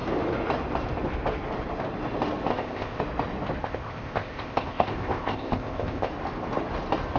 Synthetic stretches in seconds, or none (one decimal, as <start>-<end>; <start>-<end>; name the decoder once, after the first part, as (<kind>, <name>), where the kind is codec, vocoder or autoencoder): 2.5-3.0 (codec, ZipCodec); 3.6-6.1